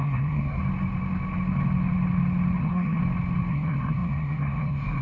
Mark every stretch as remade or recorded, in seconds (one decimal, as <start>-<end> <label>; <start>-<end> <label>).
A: 0.0-0.6 remade; 0.6-2.6 recorded; 2.6-3.0 remade; 3.0-3.5 recorded; 3.5-5.0 remade

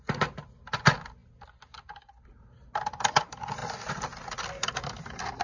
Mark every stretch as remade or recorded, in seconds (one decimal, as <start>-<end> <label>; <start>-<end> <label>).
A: 0.0-5.4 recorded

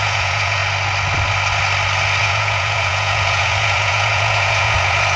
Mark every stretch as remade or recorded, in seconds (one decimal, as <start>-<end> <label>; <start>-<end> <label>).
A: 0.0-0.6 remade; 0.6-2.2 recorded; 2.2-5.2 remade

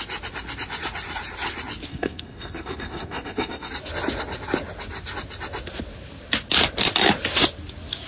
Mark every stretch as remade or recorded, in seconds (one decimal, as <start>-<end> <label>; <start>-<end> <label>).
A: 0.0-1.9 recorded; 1.9-3.7 remade; 3.7-8.1 recorded

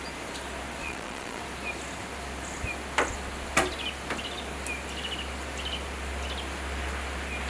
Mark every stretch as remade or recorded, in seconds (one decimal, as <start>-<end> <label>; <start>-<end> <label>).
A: 0.0-0.8 recorded; 0.8-1.4 remade; 1.4-7.5 recorded

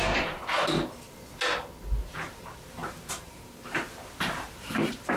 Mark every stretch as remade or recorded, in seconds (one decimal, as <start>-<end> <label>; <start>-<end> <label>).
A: 0.0-0.4 remade; 0.4-2.0 recorded; 2.0-5.2 remade